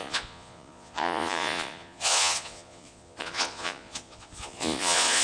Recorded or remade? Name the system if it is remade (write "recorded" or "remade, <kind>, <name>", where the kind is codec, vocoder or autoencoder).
remade, vocoder, Vocos